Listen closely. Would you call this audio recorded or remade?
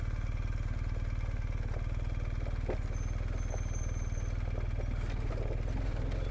recorded